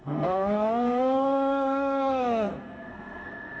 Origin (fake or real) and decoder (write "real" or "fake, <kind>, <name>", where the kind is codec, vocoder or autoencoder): fake, codec, SNAC